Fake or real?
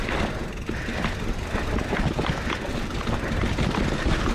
real